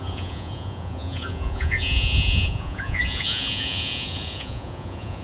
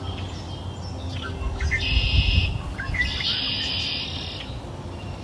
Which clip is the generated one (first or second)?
first